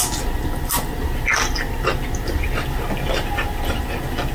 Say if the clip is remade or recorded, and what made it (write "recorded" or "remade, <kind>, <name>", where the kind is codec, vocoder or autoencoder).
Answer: recorded